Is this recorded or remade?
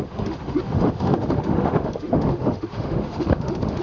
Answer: remade